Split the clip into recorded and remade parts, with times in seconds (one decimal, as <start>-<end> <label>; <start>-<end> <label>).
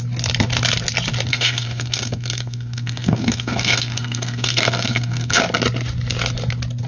0.0-1.3 recorded; 1.3-5.4 remade; 5.4-6.9 recorded